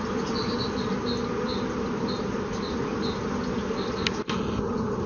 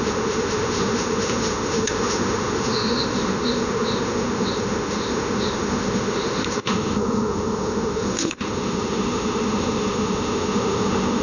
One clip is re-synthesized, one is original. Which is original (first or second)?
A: first